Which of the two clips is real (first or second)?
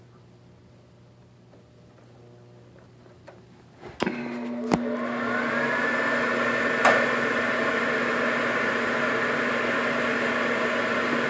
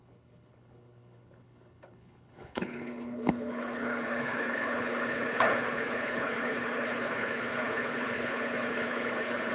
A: first